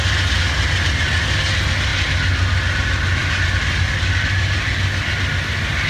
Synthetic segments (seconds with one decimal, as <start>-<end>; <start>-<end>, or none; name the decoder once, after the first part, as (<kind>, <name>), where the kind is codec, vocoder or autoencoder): none